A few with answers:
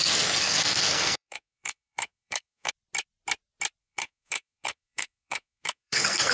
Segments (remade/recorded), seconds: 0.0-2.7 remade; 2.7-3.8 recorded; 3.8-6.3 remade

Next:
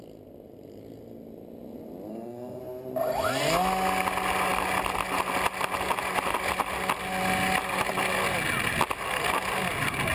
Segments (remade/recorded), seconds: 0.0-2.1 recorded; 2.1-2.6 remade; 2.6-10.1 recorded

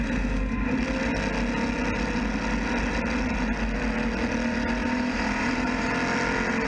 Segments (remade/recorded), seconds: 0.0-4.8 recorded; 4.8-5.9 remade; 5.9-6.7 recorded